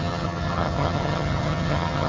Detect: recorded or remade remade